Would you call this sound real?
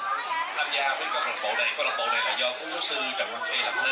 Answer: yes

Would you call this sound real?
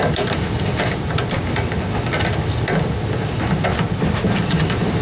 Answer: yes